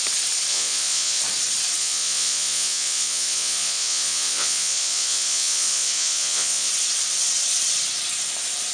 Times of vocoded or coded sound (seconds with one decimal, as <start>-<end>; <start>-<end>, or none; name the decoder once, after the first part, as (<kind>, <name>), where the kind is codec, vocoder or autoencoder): 0.5-1.2 (vocoder, Vocos); 1.8-6.7